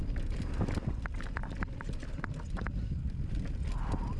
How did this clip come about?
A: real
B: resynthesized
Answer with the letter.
A